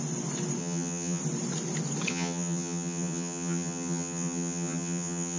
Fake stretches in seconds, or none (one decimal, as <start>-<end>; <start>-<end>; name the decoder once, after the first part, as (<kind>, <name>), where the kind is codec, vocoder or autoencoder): 0.6-1.2 (vocoder, HiFi-GAN); 2.1-5.4